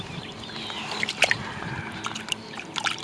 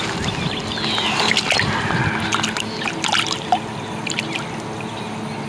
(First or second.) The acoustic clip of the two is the second